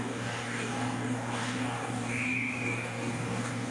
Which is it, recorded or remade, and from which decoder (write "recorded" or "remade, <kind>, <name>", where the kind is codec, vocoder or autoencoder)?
remade, codec, DAC